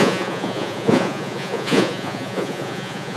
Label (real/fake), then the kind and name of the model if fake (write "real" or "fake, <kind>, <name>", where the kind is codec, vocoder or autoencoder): fake, vocoder, Vocos